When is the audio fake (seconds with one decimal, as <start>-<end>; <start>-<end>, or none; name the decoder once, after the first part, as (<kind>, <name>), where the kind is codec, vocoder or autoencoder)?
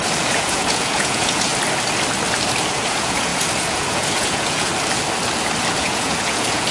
0.0-1.5 (vocoder, Vocos); 2.7-4.7; 5.8-6.7